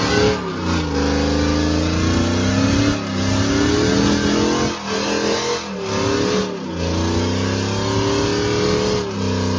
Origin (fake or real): real